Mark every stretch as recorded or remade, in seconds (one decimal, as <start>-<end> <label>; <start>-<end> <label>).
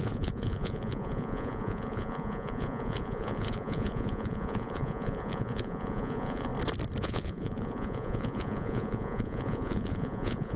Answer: 0.0-6.5 remade; 6.5-7.0 recorded; 7.0-10.6 remade